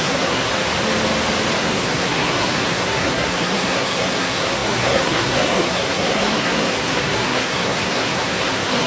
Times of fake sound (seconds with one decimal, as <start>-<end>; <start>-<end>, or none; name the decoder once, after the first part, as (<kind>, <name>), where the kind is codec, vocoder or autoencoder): 0.0-0.5 (codec, SNAC); 1.6-8.9